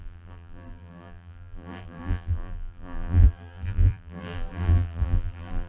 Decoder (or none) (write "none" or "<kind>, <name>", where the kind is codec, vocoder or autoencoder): vocoder, BigVGAN v2